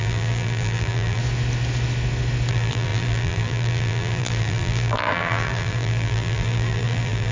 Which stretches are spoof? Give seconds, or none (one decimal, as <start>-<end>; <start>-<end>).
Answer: 0.0-1.2; 2.5-7.3